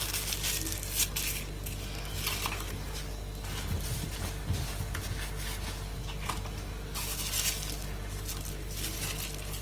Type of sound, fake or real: real